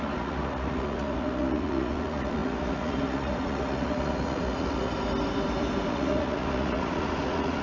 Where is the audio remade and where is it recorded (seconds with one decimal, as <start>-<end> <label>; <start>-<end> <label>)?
0.0-4.9 remade; 4.9-5.9 recorded; 5.9-7.6 remade